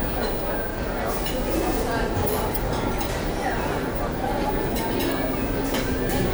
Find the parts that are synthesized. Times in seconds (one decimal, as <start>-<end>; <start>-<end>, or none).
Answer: 0.7-4.5